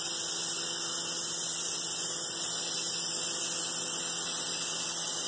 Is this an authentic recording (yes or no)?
yes